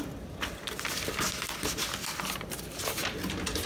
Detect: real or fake real